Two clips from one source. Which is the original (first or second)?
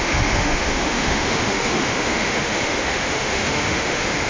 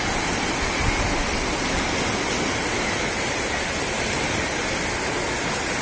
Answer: second